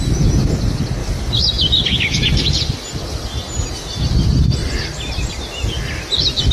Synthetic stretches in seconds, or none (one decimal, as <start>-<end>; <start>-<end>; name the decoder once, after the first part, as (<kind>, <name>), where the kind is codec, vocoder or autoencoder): none